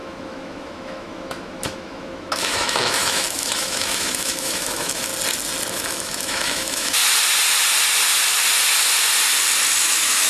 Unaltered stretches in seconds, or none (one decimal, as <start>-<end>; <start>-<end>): 5.1-5.7; 7.0-9.8